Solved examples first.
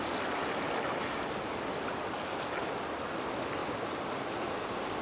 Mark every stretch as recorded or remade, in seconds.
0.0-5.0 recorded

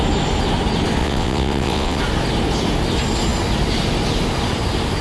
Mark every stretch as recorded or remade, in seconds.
0.0-1.0 recorded; 1.0-2.0 remade; 2.0-5.0 recorded

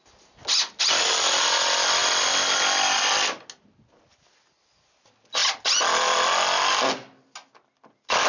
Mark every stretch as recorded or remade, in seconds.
0.0-8.3 recorded

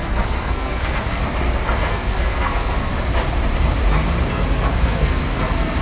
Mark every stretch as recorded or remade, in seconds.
0.0-1.2 remade; 1.2-1.8 recorded; 1.8-2.9 remade; 2.9-4.3 recorded; 4.3-5.8 remade